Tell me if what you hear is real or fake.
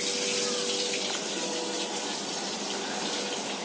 real